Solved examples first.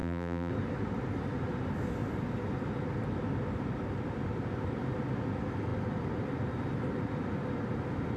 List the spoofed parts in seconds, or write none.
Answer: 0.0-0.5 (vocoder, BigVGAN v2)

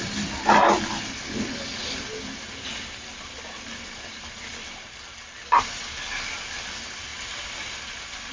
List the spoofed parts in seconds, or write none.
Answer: none